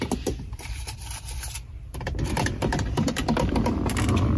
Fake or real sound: real